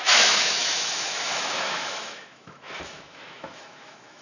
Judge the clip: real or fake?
fake